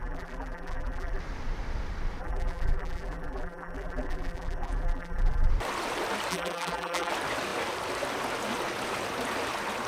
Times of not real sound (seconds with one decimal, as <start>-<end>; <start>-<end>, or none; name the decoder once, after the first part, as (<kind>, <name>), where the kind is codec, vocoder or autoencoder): 0.0-1.2 (vocoder, BigVGAN v2); 2.2-5.5; 6.3-7.1